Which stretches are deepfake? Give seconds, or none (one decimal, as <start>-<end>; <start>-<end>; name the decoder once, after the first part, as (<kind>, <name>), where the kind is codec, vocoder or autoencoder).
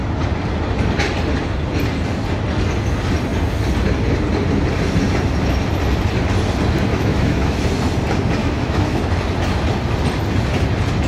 6.9-7.6 (autoencoder, DAC-VAE); 8.4-9.0